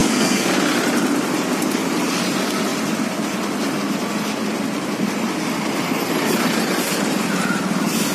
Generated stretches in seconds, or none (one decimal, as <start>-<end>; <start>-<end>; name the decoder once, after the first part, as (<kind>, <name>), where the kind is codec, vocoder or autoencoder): 0.0-0.5 (codec, SNAC)